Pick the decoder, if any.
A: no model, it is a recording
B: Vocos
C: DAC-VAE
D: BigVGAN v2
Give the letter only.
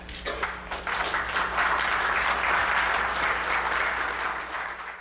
A